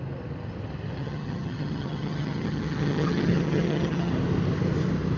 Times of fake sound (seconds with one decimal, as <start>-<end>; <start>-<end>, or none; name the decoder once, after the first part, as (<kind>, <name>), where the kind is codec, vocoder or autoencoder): 1.0-4.1 (vocoder, HiFi-GAN)